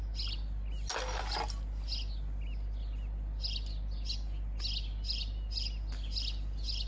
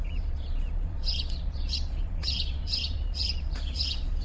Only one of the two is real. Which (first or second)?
first